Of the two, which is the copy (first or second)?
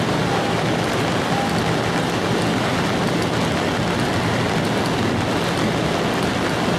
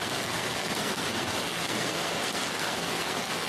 second